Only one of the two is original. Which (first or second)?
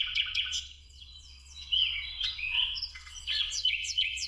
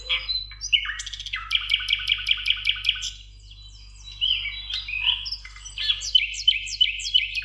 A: second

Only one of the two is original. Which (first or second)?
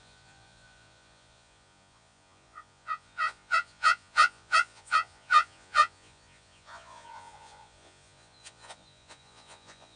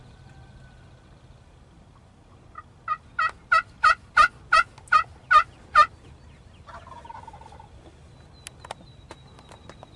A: second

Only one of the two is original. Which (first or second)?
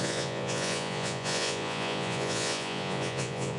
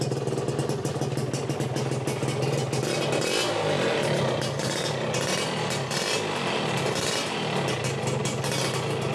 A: second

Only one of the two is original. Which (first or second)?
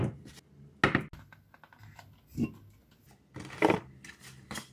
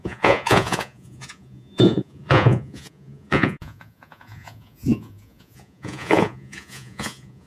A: first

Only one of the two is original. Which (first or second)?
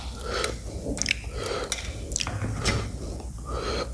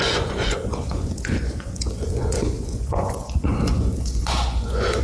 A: first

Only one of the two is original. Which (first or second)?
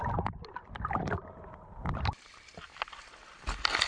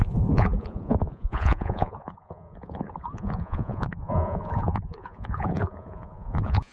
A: first